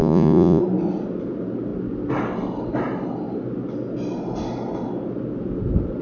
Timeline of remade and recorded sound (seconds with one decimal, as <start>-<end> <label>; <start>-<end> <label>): 0.0-0.6 remade; 0.6-6.0 recorded